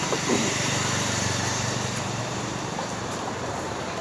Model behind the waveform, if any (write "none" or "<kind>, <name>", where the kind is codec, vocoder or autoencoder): vocoder, BigVGAN v2